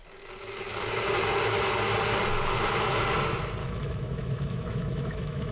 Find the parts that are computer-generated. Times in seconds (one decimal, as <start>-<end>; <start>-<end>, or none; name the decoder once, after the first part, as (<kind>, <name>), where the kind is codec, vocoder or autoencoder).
3.6-5.5 (autoencoder, DAC-VAE)